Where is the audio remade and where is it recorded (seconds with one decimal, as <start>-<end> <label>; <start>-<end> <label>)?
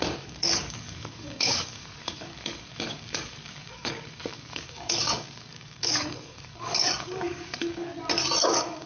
0.0-7.9 remade; 7.9-8.4 recorded; 8.4-8.9 remade